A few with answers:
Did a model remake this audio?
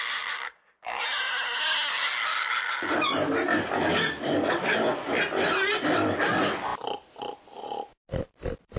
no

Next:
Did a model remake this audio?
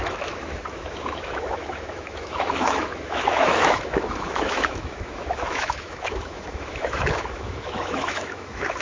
yes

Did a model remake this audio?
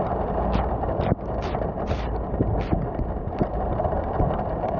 no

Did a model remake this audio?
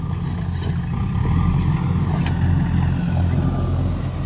no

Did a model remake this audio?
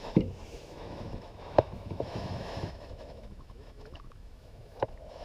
yes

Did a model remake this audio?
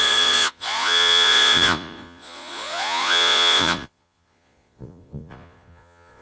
yes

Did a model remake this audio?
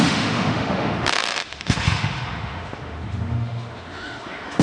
yes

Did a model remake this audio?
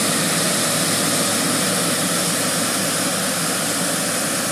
no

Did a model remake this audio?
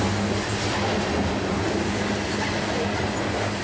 no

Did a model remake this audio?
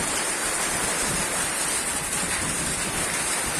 yes